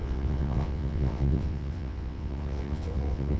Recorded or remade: remade